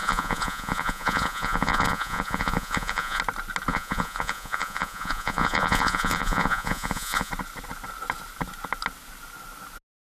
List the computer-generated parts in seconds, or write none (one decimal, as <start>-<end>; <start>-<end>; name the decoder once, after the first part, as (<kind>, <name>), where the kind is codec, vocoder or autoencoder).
0.0-3.2 (vocoder, Vocos); 3.7-7.3